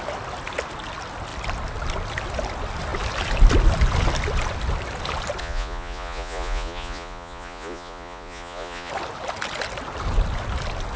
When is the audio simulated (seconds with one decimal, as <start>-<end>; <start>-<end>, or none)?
5.4-8.9